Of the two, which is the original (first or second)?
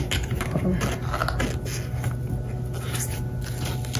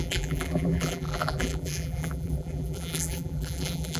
first